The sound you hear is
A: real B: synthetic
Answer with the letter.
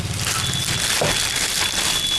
A